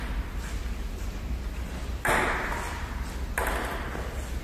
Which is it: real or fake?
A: real